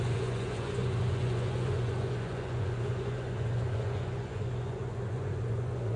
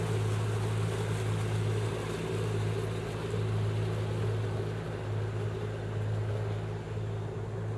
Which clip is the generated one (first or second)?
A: first